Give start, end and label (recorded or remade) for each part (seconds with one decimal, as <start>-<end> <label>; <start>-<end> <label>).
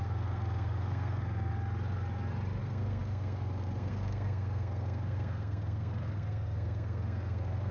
0.0-1.5 remade; 1.5-2.6 recorded; 2.6-7.7 remade